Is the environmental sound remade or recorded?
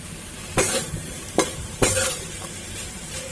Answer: remade